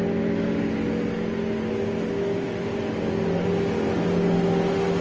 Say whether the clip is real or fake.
real